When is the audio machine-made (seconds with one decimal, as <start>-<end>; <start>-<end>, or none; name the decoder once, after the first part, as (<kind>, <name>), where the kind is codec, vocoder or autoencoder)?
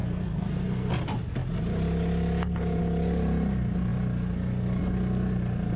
0.0-0.9 (codec, SNAC)